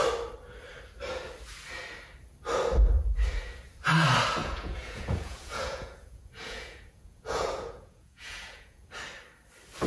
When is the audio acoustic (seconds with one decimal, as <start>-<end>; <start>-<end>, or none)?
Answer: 0.0-4.4; 8.9-9.9